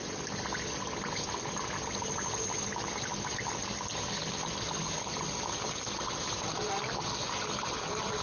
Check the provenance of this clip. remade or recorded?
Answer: recorded